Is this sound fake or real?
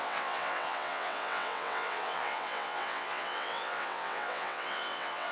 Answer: fake